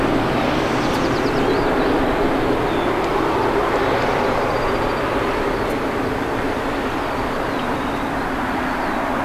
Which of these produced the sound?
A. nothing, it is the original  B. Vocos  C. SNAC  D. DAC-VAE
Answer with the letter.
A